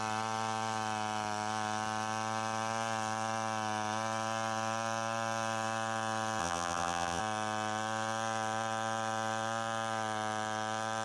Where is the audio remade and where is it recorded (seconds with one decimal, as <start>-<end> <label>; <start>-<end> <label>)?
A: 0.0-6.4 recorded; 6.4-7.2 remade; 7.2-11.0 recorded